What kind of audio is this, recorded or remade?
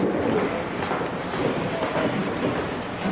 remade